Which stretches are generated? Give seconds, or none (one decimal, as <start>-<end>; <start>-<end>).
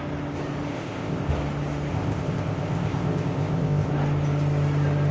0.7-1.3; 1.9-3.9